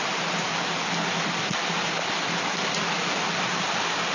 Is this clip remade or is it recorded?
recorded